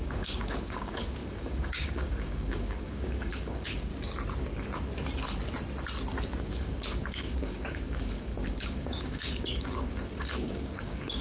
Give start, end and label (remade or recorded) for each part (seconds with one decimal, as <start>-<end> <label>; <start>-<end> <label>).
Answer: 0.0-3.9 remade; 3.9-6.4 recorded; 6.4-11.2 remade